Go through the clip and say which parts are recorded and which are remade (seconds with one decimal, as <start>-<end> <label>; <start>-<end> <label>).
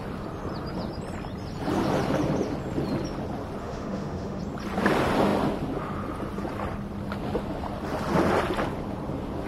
0.0-3.6 recorded; 3.6-4.4 remade; 4.4-9.5 recorded